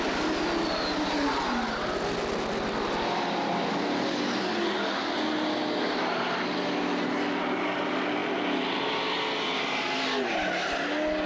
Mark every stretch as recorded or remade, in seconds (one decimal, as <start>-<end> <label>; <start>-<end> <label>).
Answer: 0.0-11.3 recorded